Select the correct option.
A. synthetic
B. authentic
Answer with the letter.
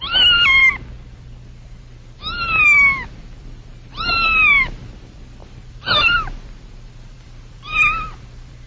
A